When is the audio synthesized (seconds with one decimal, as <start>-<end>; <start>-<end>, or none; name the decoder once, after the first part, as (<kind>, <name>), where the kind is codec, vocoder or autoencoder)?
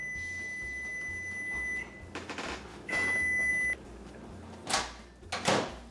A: 2.7-3.5 (autoencoder, DAC-VAE)